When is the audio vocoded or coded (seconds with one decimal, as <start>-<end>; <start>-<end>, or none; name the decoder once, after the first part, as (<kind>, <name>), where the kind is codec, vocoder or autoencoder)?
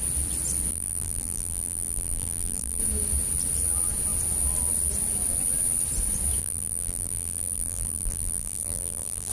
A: 0.7-2.8 (vocoder, BigVGAN v2); 6.4-9.3